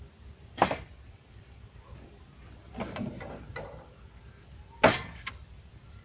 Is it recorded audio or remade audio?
recorded